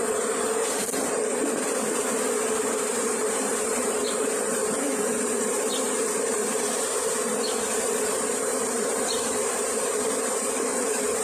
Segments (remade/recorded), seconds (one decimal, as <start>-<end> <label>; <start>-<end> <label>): 0.0-1.3 remade; 1.3-2.8 recorded; 2.8-11.2 remade